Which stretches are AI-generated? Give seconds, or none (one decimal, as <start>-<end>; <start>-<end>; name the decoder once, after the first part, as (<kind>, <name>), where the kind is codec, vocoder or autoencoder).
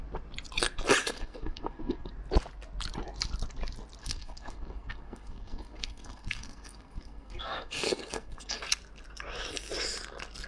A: 1.0-2.1 (codec, SNAC); 4.0-8.6